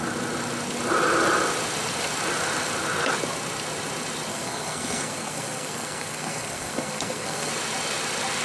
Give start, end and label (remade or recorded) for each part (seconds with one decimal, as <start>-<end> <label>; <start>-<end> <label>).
0.0-4.3 recorded; 4.3-7.5 remade; 7.5-8.4 recorded